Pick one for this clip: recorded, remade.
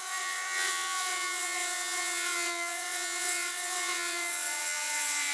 remade